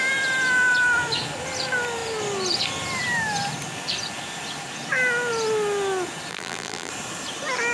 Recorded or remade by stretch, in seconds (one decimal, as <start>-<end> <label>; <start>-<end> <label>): 0.0-6.3 recorded; 6.3-6.9 remade; 6.9-7.7 recorded